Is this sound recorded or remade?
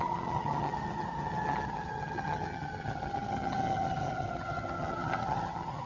remade